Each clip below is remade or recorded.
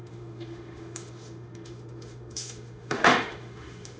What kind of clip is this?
remade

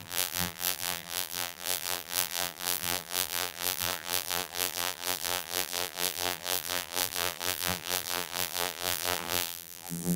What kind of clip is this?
remade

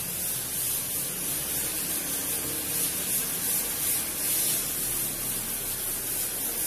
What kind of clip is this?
recorded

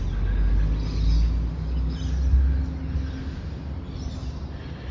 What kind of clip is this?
recorded